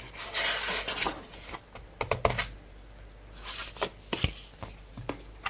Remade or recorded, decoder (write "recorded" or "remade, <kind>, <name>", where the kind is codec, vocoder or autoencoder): recorded